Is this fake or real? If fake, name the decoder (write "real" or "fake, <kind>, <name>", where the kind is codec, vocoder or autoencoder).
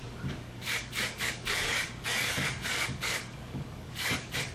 fake, codec, DAC